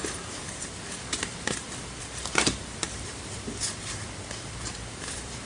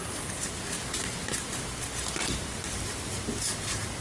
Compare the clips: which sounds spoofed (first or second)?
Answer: first